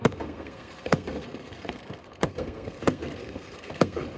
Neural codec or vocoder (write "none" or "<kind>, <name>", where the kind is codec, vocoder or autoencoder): codec, SNAC